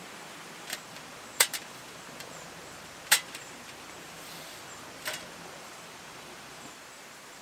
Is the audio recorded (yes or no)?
no